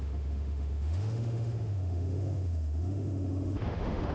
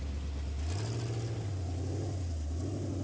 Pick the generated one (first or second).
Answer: first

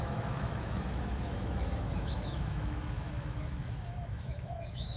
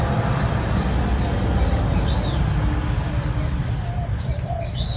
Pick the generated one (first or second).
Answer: first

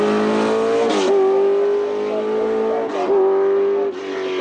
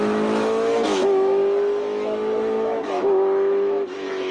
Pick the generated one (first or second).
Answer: second